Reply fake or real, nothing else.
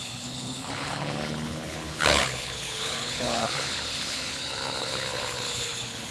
fake